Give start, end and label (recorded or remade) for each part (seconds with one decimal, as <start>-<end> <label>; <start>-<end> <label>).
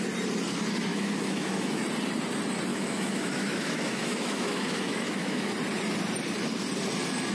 0.0-0.9 recorded; 0.9-1.8 remade; 1.8-2.7 recorded; 2.7-5.5 remade; 5.5-7.3 recorded